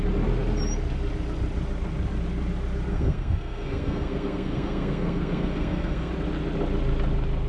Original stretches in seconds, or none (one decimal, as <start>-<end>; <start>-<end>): 0.0-2.9; 6.1-7.5